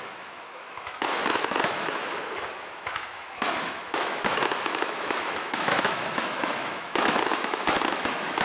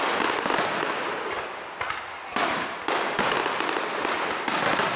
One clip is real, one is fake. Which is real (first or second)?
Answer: second